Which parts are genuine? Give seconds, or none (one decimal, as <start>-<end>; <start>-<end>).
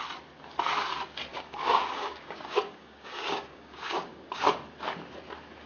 0.0-1.3; 4.4-5.7